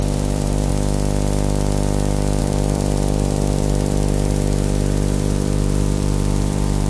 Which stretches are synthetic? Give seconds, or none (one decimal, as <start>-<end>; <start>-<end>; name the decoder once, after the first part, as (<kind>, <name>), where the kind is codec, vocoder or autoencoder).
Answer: 0.0-0.7 (vocoder, BigVGAN v2); 2.4-6.9